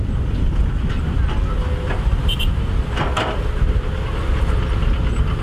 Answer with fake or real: real